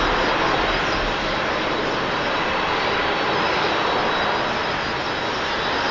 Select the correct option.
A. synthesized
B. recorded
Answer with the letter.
B